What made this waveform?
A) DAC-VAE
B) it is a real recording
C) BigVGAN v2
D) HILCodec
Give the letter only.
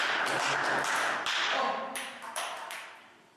B